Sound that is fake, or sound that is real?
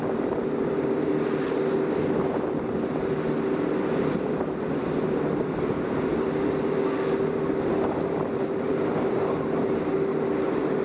real